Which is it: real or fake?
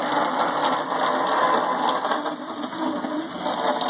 real